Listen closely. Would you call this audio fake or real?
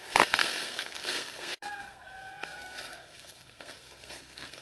fake